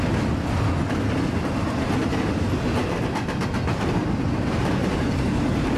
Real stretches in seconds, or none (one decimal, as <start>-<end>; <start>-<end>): 0.0-4.0